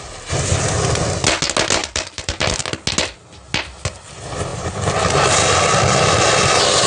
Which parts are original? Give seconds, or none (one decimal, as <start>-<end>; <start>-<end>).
0.0-1.8; 2.6-6.9

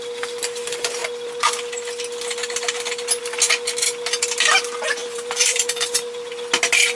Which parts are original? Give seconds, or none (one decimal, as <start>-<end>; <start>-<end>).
0.0-5.0; 6.3-7.0

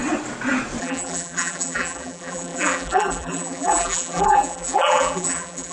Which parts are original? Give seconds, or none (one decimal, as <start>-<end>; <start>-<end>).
0.0-0.8

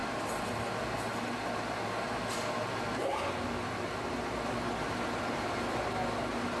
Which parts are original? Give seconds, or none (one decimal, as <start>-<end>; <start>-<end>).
0.0-6.6

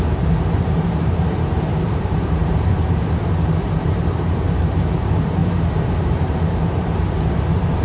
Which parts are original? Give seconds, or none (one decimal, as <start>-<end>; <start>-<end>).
5.4-6.0

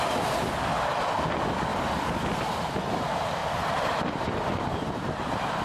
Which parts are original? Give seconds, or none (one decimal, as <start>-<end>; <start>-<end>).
0.0-3.4